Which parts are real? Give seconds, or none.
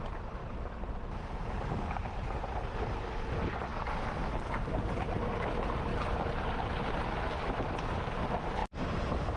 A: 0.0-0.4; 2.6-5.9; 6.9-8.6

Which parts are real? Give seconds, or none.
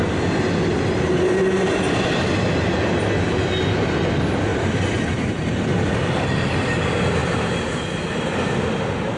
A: 0.0-4.5; 5.5-7.2; 7.8-9.2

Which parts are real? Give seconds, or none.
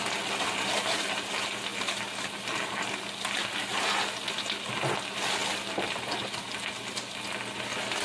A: 0.0-8.0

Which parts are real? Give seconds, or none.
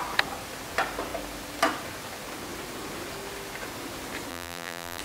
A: 0.0-4.3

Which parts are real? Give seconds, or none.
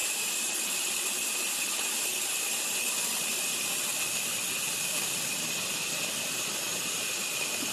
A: 0.0-7.7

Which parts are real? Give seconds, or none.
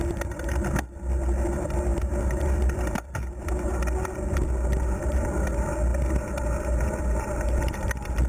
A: 0.0-1.9; 3.5-8.3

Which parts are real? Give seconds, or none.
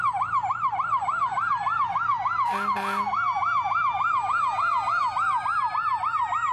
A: 2.1-6.0